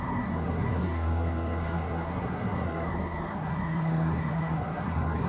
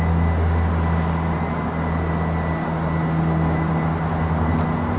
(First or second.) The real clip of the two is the second